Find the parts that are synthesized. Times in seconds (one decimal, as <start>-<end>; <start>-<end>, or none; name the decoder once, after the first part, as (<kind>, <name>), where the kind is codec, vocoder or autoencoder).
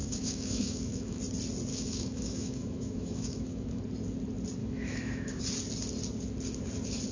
0.0-1.2 (autoencoder, DAC-VAE); 1.7-3.8; 4.6-5.4